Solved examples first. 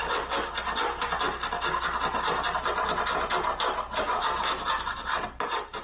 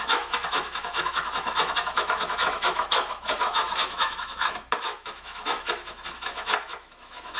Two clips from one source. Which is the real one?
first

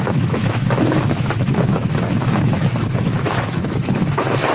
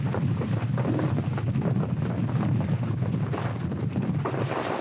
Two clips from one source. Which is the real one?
second